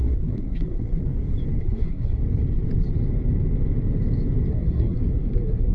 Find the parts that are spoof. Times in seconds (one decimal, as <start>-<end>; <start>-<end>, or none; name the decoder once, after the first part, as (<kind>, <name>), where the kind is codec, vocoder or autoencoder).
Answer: 0.0-1.0 (codec, SNAC); 1.6-2.2; 4.5-5.7